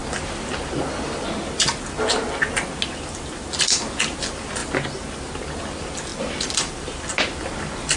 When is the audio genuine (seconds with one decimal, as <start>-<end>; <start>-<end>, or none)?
0.0-8.0